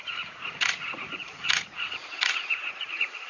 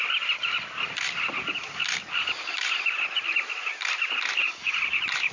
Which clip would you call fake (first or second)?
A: first